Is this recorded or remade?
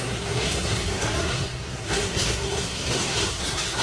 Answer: remade